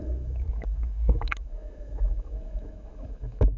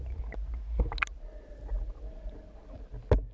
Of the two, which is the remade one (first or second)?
first